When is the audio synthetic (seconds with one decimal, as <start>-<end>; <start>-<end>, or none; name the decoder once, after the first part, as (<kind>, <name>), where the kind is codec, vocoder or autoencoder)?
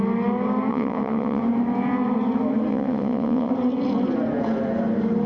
0.7-1.4 (vocoder, WaveNeXt); 2.7-3.5